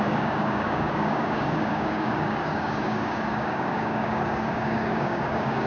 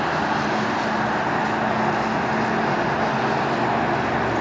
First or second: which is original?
second